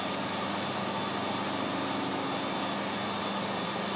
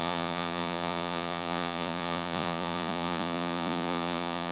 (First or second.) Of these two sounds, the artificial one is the second